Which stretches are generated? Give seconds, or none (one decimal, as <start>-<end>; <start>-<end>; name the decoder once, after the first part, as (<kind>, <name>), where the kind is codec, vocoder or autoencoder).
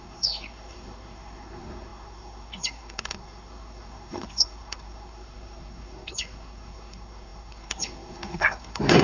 0.0-9.0 (codec, SNAC)